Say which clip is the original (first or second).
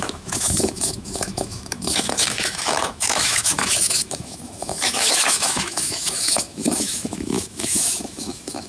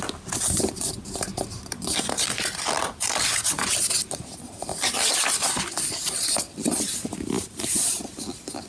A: second